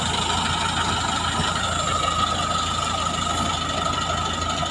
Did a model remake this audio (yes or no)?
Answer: no